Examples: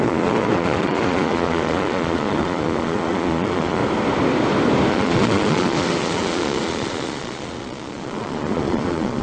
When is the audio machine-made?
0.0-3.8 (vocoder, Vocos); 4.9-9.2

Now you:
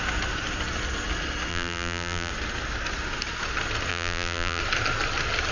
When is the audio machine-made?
1.5-2.3 (vocoder, BigVGAN v2); 3.9-4.6

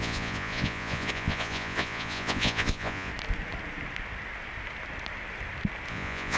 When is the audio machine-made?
0.0-3.1 (vocoder, Vocos); 5.9-6.4

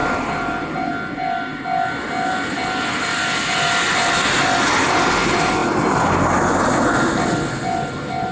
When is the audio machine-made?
0.0-0.9 (vocoder, BigVGAN v2)

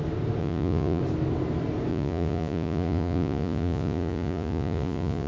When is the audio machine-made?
0.4-1.0 (vocoder, Vocos); 1.9-5.3

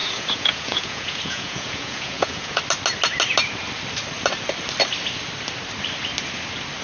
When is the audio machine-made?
0.0-2.6 (vocoder, Vocos)

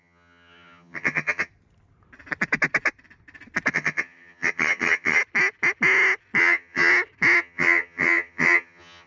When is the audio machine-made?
0.0-1.5 (vocoder, HiFi-GAN); 3.7-5.2; 6.4-6.9; 7.4-9.1